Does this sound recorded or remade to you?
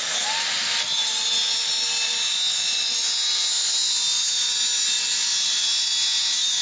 recorded